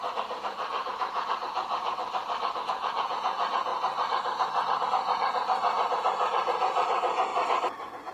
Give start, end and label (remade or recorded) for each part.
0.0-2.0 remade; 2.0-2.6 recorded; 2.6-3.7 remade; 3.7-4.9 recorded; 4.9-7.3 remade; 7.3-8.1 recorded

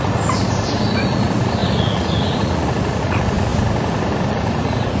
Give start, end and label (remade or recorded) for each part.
0.0-3.5 remade; 3.5-4.3 recorded; 4.3-5.0 remade

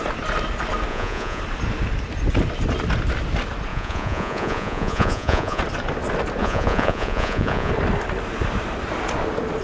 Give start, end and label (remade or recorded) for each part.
0.0-0.9 recorded; 0.9-1.4 remade; 1.4-3.7 recorded; 3.7-5.6 remade; 5.6-6.4 recorded; 6.4-7.7 remade; 7.7-9.6 recorded

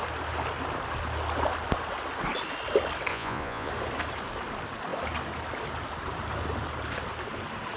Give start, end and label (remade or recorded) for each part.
0.0-3.1 recorded; 3.1-3.7 remade; 3.7-7.8 recorded

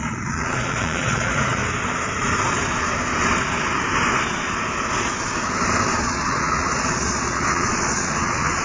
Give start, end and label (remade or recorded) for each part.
0.0-1.6 remade; 1.6-6.0 recorded; 6.0-8.6 remade

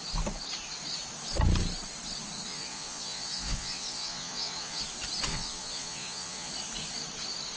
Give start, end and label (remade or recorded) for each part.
0.0-2.5 recorded; 2.5-4.8 remade; 4.8-5.3 recorded; 5.3-6.5 remade; 6.5-7.6 recorded

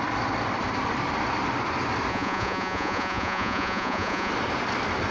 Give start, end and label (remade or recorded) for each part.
0.0-2.1 recorded; 2.1-4.3 remade; 4.3-5.1 recorded

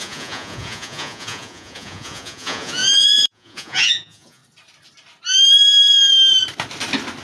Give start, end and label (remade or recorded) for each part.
0.0-4.4 remade; 4.4-7.2 recorded